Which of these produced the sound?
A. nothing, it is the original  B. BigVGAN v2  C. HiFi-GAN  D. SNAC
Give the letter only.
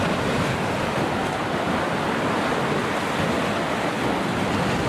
A